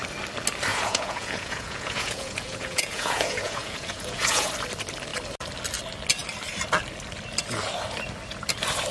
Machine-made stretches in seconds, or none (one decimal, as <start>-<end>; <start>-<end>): 0.7-4.5